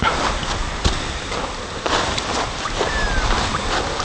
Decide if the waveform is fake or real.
real